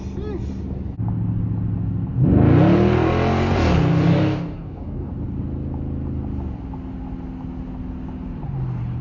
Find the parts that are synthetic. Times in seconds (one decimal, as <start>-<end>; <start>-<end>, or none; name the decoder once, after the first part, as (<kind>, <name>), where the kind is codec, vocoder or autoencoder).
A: 3.9-5.1 (codec, DAC)